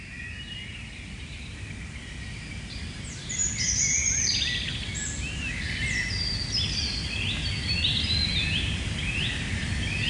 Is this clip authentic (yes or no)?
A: yes